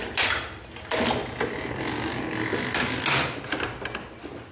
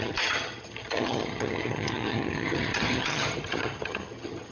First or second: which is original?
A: first